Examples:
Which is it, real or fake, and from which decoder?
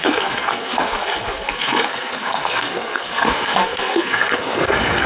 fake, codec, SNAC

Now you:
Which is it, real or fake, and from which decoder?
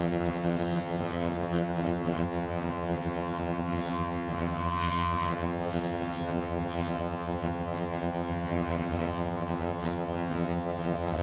fake, vocoder, HiFi-GAN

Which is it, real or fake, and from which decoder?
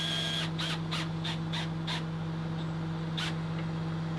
real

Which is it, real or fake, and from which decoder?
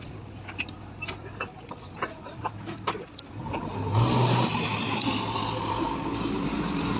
real